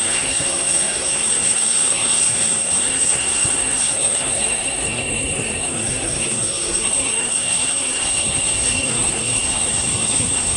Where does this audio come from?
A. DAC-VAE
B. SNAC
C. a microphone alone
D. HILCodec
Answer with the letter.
B